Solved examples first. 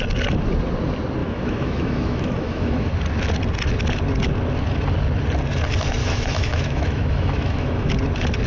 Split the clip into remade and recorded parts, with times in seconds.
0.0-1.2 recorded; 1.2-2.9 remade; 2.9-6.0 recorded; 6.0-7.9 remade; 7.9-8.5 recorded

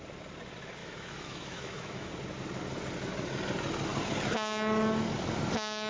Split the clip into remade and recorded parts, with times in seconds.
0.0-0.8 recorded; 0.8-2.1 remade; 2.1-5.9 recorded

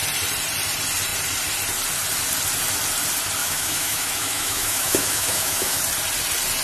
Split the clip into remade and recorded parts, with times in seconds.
0.0-3.4 recorded; 3.4-5.8 remade; 5.8-6.6 recorded

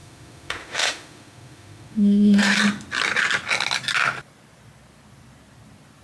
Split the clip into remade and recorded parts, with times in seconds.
0.0-2.6 remade; 2.6-6.0 recorded

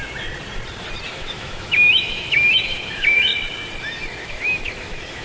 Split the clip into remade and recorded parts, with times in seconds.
0.0-1.1 recorded; 1.1-3.3 remade; 3.3-4.3 recorded; 4.3-5.2 remade

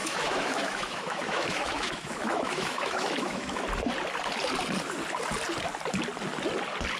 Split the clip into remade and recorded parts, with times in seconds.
0.0-3.6 remade; 3.6-7.0 recorded

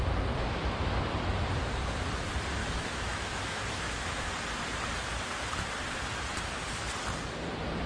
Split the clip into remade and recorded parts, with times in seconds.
0.0-2.6 recorded; 2.6-4.3 remade; 4.3-7.9 recorded

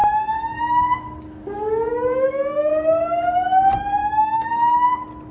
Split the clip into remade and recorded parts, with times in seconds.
0.0-1.9 recorded; 1.9-2.7 remade; 2.7-4.0 recorded; 4.0-4.5 remade; 4.5-5.3 recorded